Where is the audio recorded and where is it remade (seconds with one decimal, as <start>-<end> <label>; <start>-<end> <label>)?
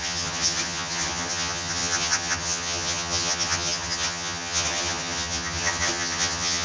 0.0-6.6 remade